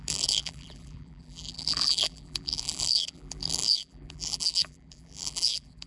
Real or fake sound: fake